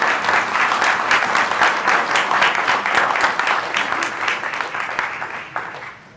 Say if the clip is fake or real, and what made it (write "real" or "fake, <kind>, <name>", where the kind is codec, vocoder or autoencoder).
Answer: real